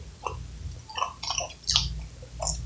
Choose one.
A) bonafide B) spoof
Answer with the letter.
A